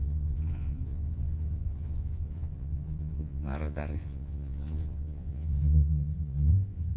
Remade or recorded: remade